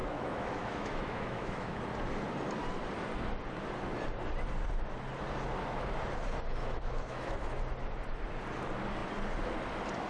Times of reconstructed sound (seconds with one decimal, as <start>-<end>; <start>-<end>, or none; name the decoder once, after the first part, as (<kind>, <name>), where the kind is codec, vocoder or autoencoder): 0.0-1.8 (autoencoder, DAC-VAE); 6.6-7.6